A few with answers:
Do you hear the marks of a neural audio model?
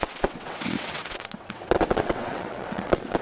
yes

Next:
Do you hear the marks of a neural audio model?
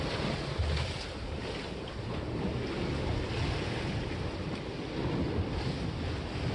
no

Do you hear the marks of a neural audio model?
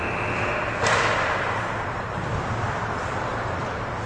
no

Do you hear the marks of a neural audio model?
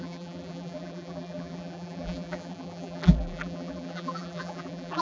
yes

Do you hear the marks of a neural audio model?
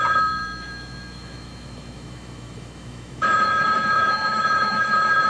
yes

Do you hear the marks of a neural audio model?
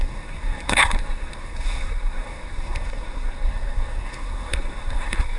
yes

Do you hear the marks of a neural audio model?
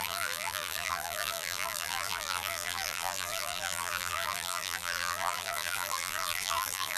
yes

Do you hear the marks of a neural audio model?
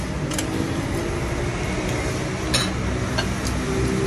no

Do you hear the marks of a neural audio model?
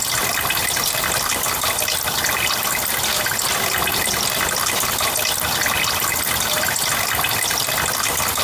no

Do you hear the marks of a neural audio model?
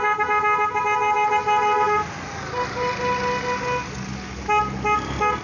no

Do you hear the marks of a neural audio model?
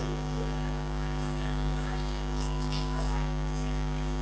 yes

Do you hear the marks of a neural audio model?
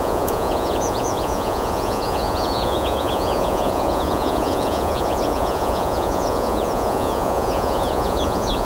yes